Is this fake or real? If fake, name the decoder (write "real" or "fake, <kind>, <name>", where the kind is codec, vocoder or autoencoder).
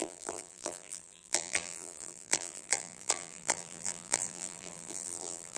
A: fake, vocoder, BigVGAN v2